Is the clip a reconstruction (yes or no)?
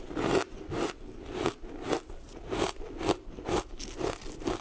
no